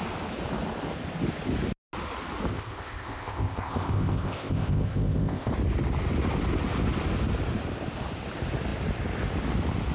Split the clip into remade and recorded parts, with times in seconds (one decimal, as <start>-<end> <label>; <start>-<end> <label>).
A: 0.0-2.5 recorded; 2.5-5.5 remade; 5.5-9.9 recorded